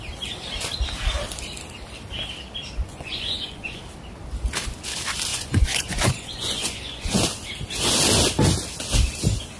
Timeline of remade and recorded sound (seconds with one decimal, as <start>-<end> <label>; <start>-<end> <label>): 0.0-2.9 recorded; 2.9-3.8 remade; 3.8-5.3 recorded; 5.3-7.2 remade; 7.2-9.6 recorded